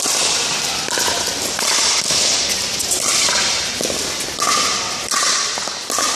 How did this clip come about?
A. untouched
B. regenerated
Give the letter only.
A